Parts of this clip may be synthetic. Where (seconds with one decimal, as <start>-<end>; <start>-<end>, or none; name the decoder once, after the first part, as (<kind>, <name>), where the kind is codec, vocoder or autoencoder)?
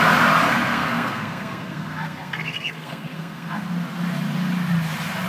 0.5-3.7 (codec, SNAC)